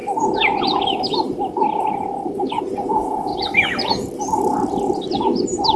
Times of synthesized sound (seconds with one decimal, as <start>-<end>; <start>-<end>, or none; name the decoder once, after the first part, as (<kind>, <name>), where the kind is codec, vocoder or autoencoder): 3.3-4.4 (vocoder, BigVGAN v2)